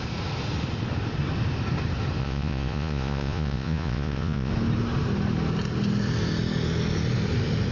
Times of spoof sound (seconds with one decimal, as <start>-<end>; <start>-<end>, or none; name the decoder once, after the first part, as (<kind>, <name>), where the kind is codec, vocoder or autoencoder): 2.2-4.5 (vocoder, Vocos)